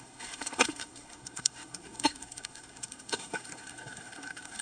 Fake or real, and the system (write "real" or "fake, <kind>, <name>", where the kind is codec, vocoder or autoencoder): fake, codec, SNAC